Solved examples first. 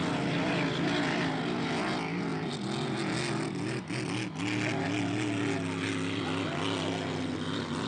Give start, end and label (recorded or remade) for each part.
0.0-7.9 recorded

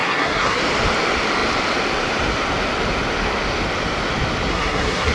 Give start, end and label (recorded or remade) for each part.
0.0-0.6 remade; 0.6-4.5 recorded; 4.5-5.1 remade

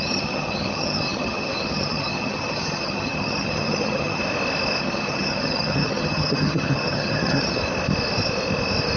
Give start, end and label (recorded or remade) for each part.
0.0-4.2 remade; 4.2-4.8 recorded; 4.8-7.6 remade; 7.6-9.0 recorded

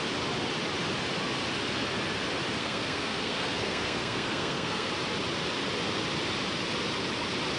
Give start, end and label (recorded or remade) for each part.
0.0-2.6 recorded; 2.6-4.9 remade; 4.9-7.6 recorded

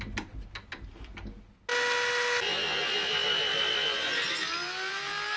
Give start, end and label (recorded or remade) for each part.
0.0-5.4 recorded